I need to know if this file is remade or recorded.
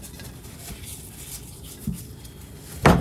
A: recorded